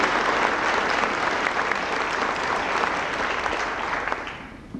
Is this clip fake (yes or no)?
no